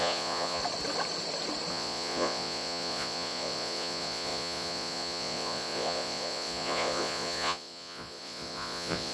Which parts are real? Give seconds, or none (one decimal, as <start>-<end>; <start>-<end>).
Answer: 0.6-1.7